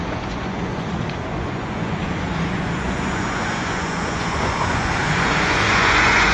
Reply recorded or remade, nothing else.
remade